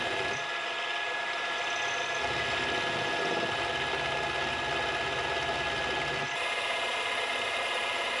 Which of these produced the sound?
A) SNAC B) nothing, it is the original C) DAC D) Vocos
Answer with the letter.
B